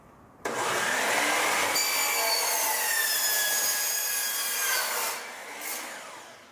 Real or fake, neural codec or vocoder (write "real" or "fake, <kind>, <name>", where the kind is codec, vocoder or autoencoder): real